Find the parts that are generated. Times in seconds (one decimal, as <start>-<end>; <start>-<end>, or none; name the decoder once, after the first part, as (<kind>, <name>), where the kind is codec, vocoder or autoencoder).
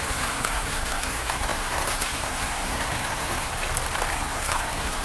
0.0-3.5 (codec, SNAC); 4.1-5.0